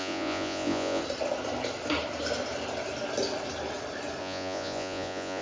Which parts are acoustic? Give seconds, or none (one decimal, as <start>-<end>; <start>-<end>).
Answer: 1.0-4.2